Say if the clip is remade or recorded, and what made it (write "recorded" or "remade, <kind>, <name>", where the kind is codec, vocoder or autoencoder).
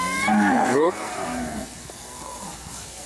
remade, codec, SNAC